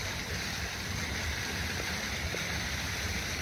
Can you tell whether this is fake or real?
real